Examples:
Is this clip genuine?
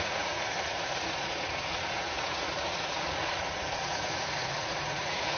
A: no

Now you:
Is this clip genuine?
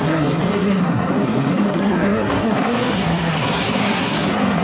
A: no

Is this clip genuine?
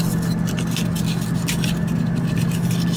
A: yes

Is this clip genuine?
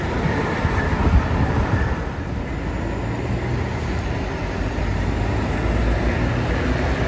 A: yes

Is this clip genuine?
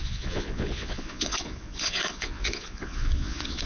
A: no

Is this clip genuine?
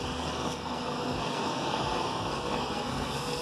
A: no